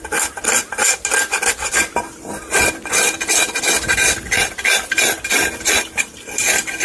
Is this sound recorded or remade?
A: recorded